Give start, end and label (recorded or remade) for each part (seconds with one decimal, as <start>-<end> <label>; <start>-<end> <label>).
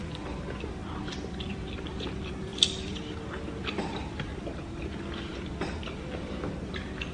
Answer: 0.0-0.8 remade; 0.8-1.8 recorded; 1.8-7.1 remade